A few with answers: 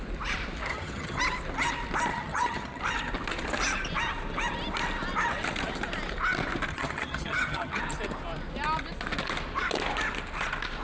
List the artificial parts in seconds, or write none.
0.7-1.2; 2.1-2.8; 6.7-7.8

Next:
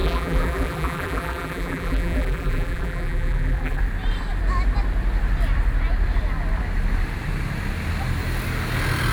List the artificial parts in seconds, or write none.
0.0-3.8

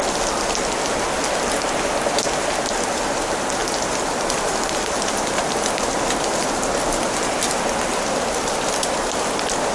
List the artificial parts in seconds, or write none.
none